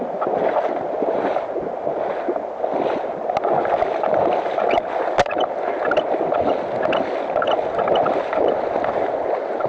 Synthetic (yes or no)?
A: no